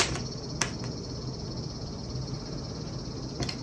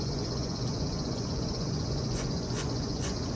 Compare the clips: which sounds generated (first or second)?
second